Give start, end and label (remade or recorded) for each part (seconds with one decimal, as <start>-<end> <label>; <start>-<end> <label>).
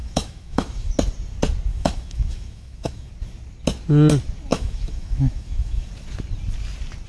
0.0-0.9 remade; 0.9-1.7 recorded; 1.7-3.1 remade; 3.1-4.5 recorded; 4.5-5.9 remade; 5.9-7.1 recorded